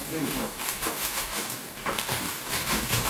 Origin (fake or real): fake